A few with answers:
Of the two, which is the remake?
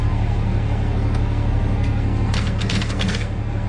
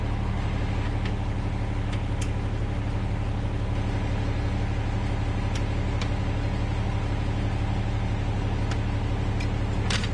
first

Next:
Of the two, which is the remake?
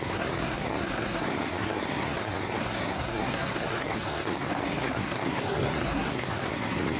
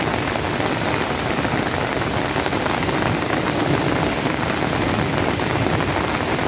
first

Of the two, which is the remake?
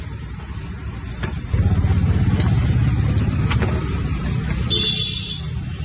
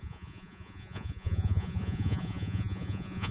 second